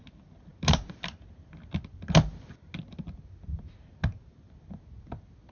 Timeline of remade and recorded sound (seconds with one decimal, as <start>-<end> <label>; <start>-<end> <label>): 0.0-5.5 recorded